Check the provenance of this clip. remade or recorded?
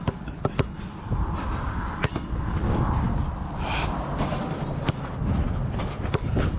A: recorded